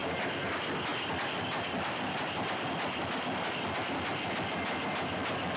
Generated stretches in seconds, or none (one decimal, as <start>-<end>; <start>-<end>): none